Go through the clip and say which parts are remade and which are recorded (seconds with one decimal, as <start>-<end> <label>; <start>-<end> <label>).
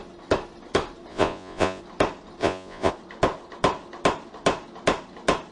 0.0-1.1 recorded; 1.1-1.8 remade; 1.8-2.4 recorded; 2.4-2.9 remade; 2.9-5.5 recorded